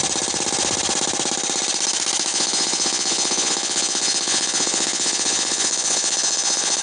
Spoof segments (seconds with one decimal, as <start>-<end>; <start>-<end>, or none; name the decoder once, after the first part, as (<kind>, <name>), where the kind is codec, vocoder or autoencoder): 2.3-6.8 (vocoder, Vocos)